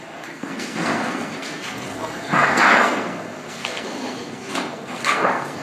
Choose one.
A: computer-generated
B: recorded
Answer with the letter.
A